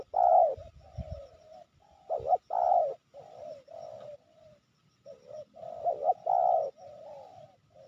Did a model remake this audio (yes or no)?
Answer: no